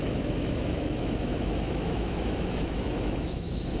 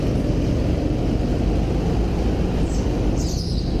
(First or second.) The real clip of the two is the second